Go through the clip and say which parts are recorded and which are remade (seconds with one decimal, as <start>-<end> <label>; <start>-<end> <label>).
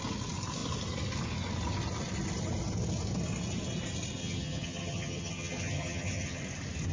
0.0-4.2 recorded; 4.2-6.4 remade; 6.4-6.9 recorded